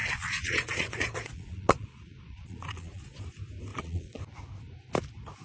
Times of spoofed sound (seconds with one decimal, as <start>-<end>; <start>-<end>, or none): 0.0-3.2; 3.7-4.2